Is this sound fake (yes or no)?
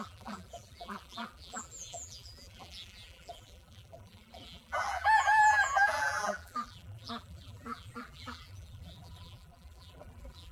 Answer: yes